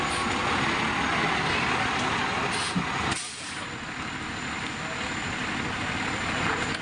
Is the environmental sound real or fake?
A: real